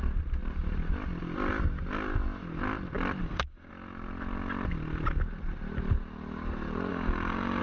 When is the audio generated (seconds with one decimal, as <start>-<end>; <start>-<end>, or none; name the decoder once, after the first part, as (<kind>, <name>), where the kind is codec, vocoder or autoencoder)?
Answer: 3.2-3.7 (codec, DAC); 6.9-7.6